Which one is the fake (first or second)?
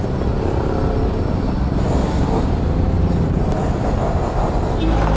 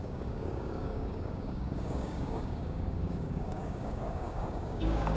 second